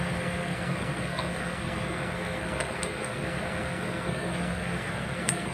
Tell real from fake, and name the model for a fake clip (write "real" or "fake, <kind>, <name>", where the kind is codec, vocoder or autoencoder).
fake, codec, SNAC